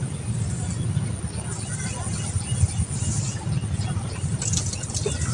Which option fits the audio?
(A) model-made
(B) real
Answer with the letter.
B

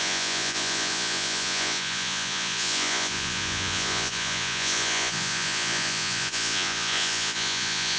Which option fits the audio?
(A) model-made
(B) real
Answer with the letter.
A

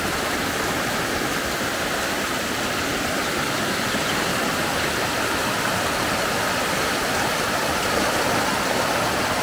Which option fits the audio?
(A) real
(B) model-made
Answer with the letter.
A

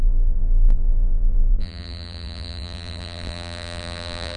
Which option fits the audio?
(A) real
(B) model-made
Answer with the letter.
B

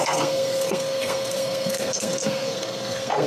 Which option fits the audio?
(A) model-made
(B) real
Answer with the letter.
A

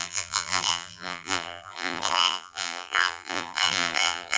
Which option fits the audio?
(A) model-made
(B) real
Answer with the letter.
A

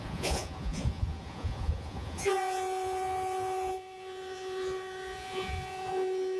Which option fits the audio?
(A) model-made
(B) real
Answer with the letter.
A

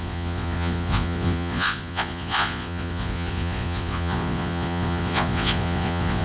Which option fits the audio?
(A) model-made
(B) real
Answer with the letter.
A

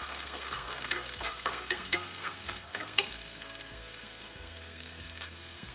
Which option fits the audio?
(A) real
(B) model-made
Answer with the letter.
B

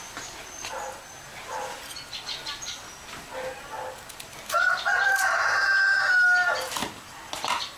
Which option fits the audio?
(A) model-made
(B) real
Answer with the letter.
B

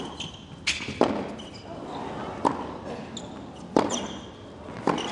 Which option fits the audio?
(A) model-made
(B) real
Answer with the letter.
B